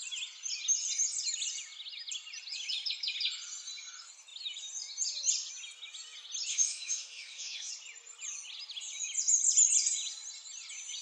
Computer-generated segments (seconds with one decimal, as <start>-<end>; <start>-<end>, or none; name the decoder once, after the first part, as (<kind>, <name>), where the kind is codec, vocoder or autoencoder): 6.5-7.7 (autoencoder, DAC-VAE)